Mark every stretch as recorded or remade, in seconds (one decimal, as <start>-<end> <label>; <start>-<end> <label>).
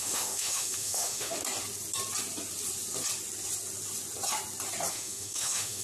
0.0-1.4 remade; 1.4-4.9 recorded; 4.9-5.8 remade